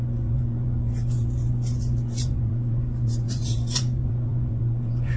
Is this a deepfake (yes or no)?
yes